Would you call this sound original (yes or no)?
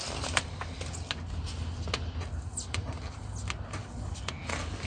yes